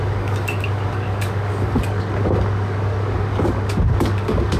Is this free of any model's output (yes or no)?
no